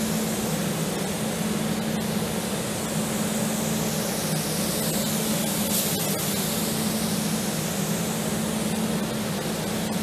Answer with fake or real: real